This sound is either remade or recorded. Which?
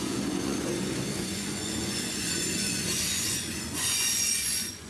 remade